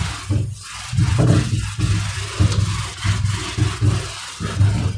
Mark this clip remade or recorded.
recorded